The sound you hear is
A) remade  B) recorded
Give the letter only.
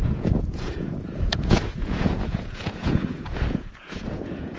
A